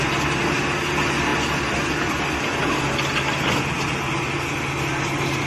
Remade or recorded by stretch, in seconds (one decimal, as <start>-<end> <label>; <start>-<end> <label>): 0.0-5.5 recorded